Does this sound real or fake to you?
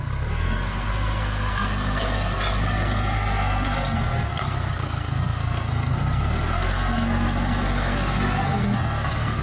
fake